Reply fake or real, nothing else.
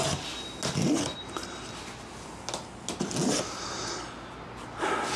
real